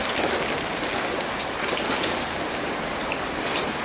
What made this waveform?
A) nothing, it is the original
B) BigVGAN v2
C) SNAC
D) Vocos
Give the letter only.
A